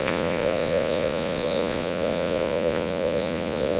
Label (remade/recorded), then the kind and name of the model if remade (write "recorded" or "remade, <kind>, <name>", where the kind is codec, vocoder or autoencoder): remade, vocoder, Vocos